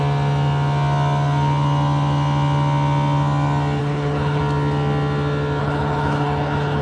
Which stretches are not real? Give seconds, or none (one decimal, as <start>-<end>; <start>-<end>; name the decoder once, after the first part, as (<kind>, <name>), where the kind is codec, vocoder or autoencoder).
3.8-4.4 (codec, HILCodec); 5.6-6.8